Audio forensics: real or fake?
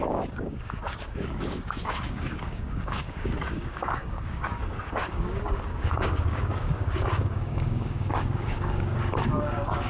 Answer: fake